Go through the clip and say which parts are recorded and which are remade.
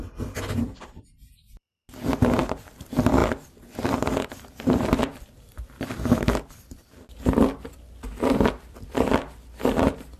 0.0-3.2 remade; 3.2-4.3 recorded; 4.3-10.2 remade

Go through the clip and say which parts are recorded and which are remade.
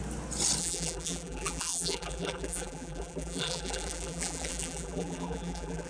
0.0-0.6 recorded; 0.6-5.9 remade